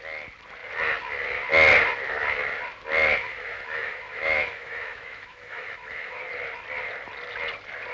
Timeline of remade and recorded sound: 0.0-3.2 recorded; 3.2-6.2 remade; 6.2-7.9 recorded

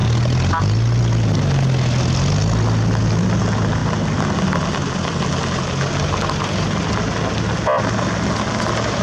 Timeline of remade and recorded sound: 0.0-9.0 recorded

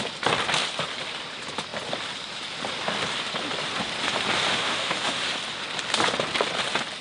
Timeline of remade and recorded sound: 0.0-4.5 recorded; 4.5-5.2 remade; 5.2-7.0 recorded

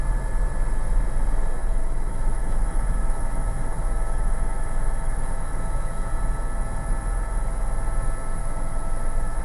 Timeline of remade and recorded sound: 0.0-1.6 recorded; 1.6-6.1 remade; 6.1-8.4 recorded; 8.4-9.4 remade

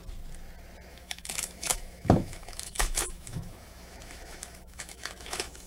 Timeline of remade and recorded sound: 0.0-0.9 recorded; 0.9-5.7 remade

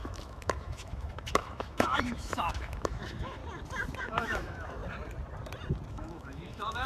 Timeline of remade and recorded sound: 0.0-3.4 remade; 3.4-4.0 recorded; 4.0-4.8 remade; 4.8-5.9 recorded; 5.9-6.9 remade

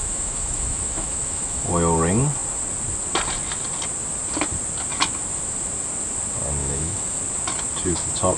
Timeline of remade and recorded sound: 0.0-1.7 remade; 1.7-6.6 recorded; 6.6-7.2 remade; 7.2-8.4 recorded